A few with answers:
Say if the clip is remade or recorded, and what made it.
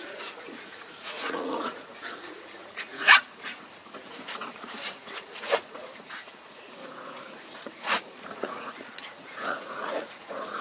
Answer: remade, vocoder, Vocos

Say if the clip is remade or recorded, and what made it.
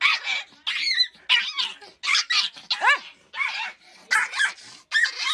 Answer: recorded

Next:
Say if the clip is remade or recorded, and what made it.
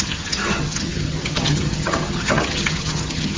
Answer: remade, vocoder, HiFi-GAN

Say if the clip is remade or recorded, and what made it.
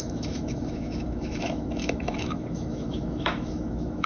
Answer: remade, autoencoder, DAC-VAE